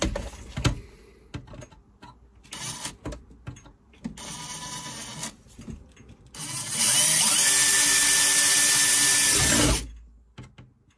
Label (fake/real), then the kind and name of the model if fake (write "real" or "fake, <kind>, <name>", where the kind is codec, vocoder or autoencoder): real